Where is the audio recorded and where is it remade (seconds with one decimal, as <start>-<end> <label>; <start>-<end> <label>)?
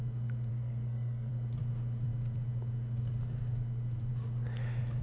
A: 0.0-0.5 recorded; 0.5-1.3 remade; 1.3-5.0 recorded